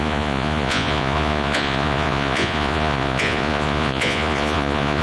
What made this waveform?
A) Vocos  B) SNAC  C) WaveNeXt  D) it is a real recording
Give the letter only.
A